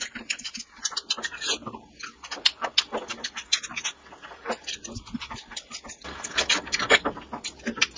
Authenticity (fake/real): real